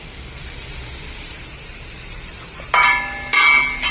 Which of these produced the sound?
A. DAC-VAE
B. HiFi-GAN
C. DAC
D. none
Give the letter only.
D